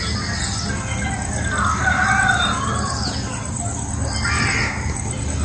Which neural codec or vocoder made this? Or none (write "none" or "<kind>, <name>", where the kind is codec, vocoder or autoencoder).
none